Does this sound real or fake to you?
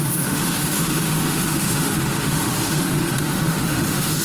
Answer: fake